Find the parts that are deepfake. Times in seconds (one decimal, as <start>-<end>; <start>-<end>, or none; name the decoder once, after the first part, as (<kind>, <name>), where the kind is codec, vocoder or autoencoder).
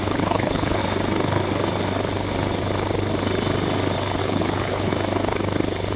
0.0-0.8 (codec, HILCodec); 4.2-4.9